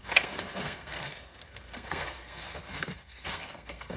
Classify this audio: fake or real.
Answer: fake